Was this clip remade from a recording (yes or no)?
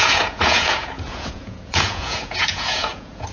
yes